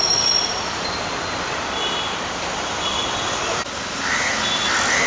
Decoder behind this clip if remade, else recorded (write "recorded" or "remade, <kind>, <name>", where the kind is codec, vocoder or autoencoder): recorded